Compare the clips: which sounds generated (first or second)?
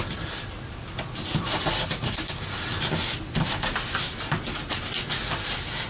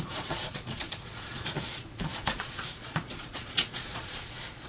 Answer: second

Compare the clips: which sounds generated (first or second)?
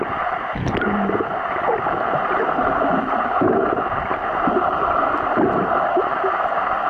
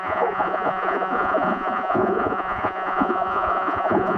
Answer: second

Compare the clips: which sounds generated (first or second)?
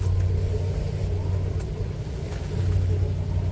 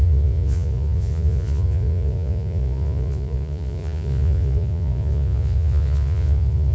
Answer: second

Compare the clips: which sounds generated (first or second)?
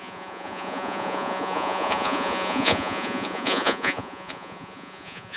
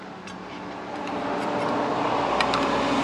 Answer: first